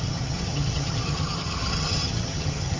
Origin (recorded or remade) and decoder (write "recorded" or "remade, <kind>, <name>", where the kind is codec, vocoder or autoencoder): remade, vocoder, HiFi-GAN